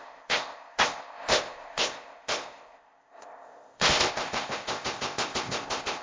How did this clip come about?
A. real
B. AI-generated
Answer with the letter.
B